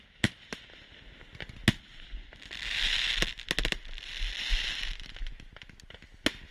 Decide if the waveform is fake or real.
real